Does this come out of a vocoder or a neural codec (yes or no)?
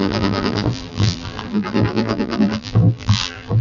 yes